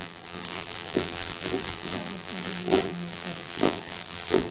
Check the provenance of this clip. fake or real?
fake